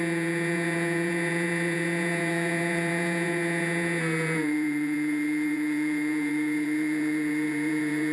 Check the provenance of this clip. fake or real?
fake